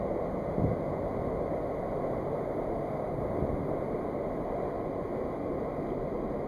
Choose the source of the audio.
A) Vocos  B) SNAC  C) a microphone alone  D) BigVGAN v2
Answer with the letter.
C